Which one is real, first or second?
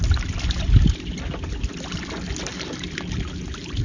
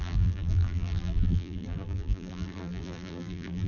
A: first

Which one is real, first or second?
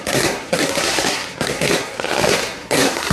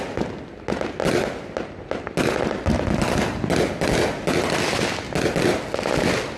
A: second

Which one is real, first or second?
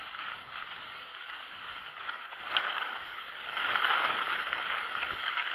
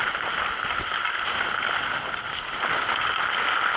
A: second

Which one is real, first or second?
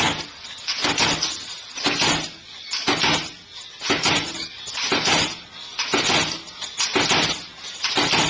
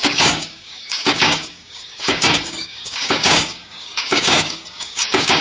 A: first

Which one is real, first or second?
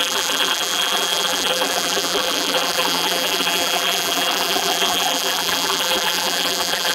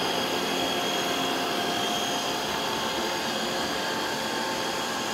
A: second